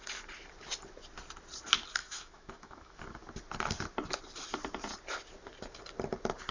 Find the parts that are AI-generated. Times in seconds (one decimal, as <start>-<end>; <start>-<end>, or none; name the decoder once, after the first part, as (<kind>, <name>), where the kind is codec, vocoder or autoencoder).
2.0-3.0 (autoencoder, DAC-VAE)